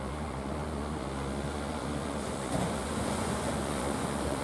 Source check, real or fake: fake